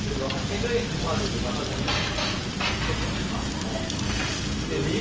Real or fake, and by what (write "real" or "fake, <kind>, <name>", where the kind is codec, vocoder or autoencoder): real